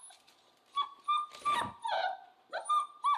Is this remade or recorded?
recorded